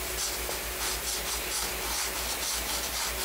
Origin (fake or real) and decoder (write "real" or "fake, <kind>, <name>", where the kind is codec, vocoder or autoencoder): real